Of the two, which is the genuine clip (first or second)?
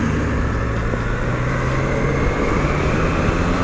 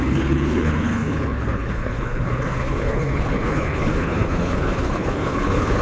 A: first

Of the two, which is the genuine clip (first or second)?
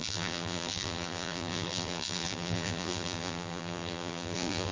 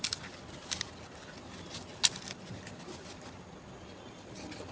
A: second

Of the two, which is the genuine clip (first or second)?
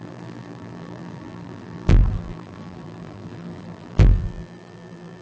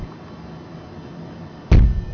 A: second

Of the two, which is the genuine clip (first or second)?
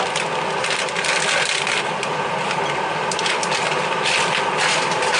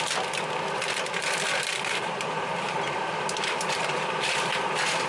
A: first